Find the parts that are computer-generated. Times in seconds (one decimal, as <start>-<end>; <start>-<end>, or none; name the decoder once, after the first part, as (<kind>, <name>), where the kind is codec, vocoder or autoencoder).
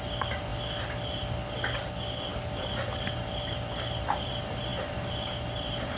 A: 2.3-4.3 (vocoder, BigVGAN v2); 4.7-6.0